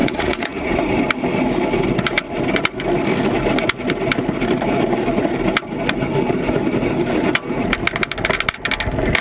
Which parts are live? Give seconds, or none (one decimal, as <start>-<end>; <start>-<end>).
0.7-9.2